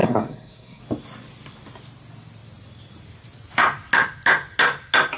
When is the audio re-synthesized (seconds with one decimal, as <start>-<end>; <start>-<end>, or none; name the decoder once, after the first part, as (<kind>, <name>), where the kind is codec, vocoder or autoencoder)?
0.0-0.8 (codec, SNAC)

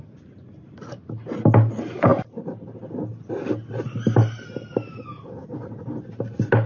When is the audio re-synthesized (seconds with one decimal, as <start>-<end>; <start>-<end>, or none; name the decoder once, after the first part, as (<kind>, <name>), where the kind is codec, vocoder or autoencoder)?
none

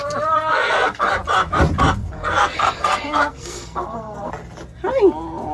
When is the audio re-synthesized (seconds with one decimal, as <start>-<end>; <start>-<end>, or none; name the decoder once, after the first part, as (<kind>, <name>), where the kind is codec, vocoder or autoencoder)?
0.5-1.1 (codec, SNAC); 2.0-4.3

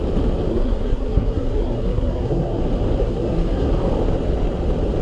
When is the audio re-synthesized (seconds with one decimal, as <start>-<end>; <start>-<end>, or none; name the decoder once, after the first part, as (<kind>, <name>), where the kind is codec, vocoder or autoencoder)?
0.5-2.6 (codec, SNAC); 3.0-3.7